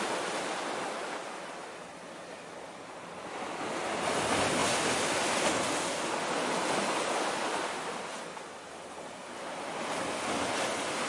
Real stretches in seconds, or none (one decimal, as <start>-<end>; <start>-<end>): 0.0-11.1